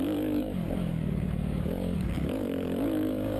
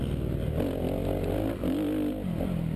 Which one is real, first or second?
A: second